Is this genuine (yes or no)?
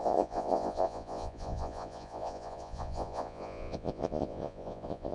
no